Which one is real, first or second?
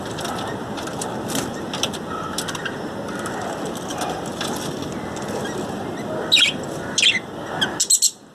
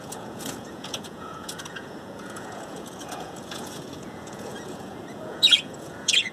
first